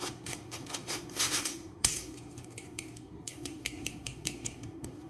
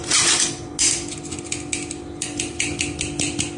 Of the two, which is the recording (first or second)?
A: second